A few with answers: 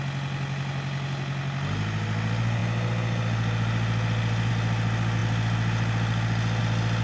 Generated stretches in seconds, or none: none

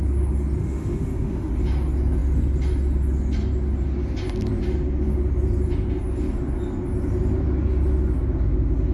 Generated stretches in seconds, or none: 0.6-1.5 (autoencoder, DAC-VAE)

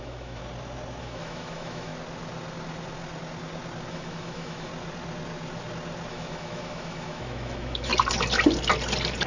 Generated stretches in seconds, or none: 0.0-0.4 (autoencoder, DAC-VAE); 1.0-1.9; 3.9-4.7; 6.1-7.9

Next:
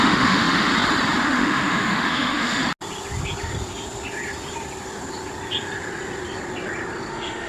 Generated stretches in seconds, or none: 0.0-0.7 (autoencoder, DAC-VAE); 1.2-2.6; 7.1-7.5

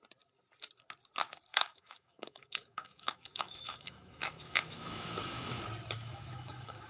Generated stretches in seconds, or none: 1.5-5.6 (autoencoder, DAC-VAE); 6.0-6.9

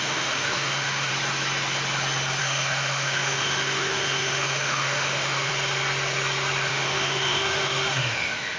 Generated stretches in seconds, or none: 0.0-1.1 (autoencoder, DAC-VAE); 2.4-5.5; 6.7-8.6

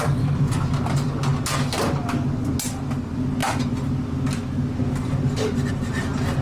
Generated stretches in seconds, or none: none